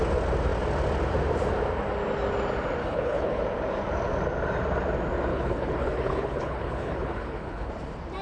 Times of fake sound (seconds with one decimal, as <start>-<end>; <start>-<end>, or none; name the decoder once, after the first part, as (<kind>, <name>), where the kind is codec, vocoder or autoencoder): 2.8-3.4 (codec, HILCodec); 5.3-7.7

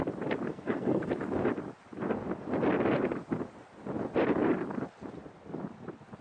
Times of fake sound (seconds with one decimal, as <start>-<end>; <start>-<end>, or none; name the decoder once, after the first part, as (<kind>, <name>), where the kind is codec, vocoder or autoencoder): 0.5-1.1 (codec, SNAC)

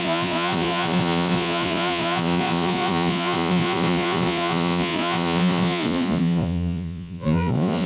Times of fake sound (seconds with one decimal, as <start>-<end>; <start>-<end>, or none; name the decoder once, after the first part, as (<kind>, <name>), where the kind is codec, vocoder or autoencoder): 0.0-7.9 (vocoder, Vocos)

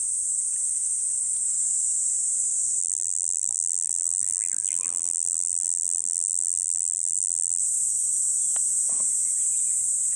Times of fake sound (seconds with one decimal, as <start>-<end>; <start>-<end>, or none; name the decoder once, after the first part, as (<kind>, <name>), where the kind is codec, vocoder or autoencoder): 2.8-7.6 (vocoder, BigVGAN v2)

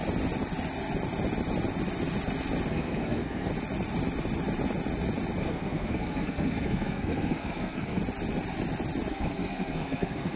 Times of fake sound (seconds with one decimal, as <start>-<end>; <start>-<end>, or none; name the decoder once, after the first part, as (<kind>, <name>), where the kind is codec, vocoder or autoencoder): 2.7-3.5 (codec, SNAC); 5.4-8.0; 9.1-10.4

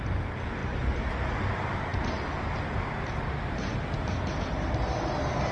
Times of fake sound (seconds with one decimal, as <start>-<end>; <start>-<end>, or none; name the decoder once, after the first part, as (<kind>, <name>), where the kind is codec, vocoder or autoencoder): none

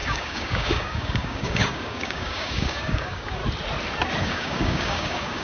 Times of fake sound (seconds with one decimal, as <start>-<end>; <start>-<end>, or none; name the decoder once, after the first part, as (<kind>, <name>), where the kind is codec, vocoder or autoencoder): 0.0-3.4 (codec, DAC); 4.2-5.4